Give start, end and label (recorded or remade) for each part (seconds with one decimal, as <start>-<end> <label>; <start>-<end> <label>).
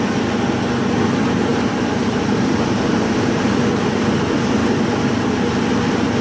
0.0-1.5 recorded; 1.5-3.5 remade; 3.5-6.2 recorded